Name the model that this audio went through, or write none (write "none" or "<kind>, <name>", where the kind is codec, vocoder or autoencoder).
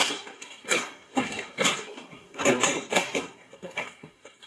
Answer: codec, SNAC